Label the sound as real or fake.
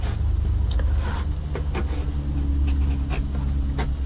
real